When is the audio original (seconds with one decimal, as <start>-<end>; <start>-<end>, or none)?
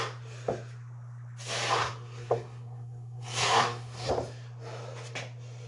0.0-1.8; 4.1-5.7